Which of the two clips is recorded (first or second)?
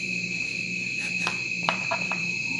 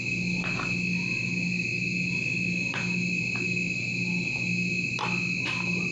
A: second